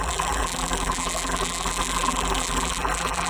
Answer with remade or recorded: remade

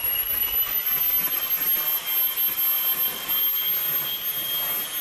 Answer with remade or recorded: recorded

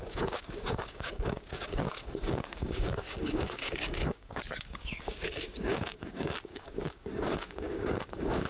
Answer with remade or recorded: remade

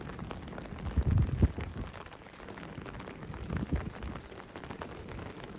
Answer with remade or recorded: recorded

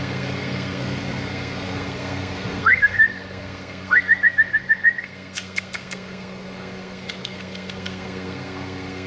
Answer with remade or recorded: remade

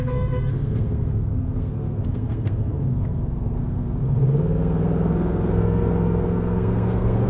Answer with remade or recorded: remade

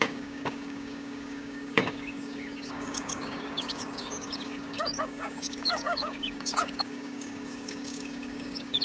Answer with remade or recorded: remade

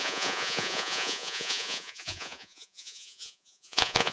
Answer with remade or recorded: remade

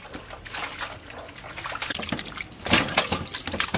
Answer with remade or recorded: recorded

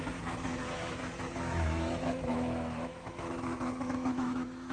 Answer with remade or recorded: remade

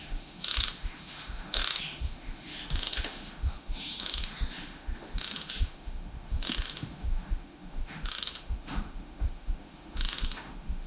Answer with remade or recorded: remade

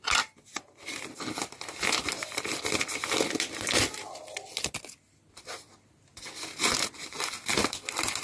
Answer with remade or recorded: recorded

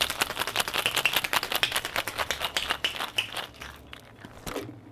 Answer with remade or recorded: recorded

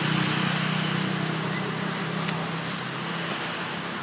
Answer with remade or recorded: recorded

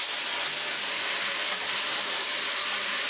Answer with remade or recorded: recorded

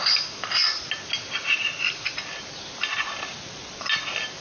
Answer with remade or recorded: recorded